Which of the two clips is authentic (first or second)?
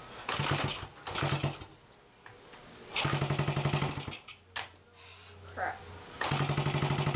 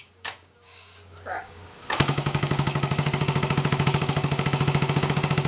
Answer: first